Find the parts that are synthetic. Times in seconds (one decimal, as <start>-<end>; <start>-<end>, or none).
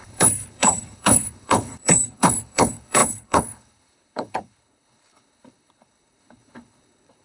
0.0-7.2